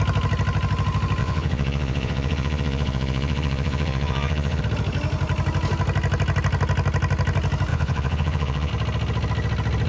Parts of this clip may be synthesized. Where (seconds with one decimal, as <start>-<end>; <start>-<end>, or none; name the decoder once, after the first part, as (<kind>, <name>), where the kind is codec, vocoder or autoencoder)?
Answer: 1.2-4.6 (vocoder, Vocos); 7.7-8.7